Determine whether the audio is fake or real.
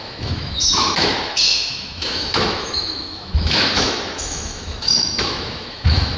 fake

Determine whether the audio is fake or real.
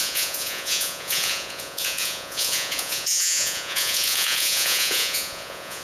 fake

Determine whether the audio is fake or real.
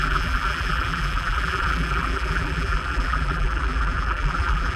fake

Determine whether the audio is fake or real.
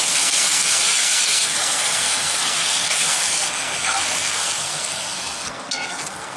fake